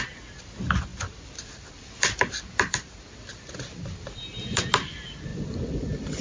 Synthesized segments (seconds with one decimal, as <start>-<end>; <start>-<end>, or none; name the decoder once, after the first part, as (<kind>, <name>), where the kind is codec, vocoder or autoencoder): 0.9-4.6 (vocoder, BigVGAN v2); 5.3-6.2